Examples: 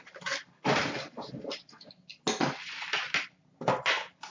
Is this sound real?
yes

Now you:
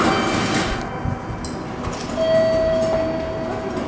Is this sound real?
yes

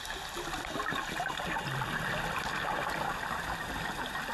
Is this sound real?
yes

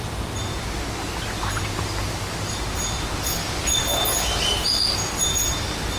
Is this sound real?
yes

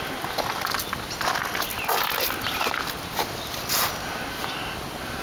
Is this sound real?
yes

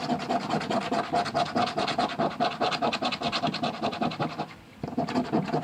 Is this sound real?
yes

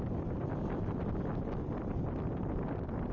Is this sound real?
yes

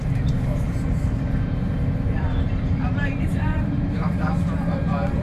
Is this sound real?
no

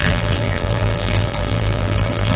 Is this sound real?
no